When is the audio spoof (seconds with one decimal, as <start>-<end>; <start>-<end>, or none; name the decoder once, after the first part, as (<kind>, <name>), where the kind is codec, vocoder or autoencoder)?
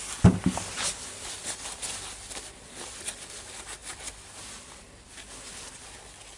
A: none